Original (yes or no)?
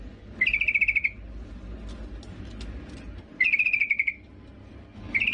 yes